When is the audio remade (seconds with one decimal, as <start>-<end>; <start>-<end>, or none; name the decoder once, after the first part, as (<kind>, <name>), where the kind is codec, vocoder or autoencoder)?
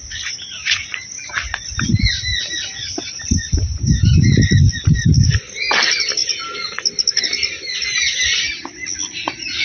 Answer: none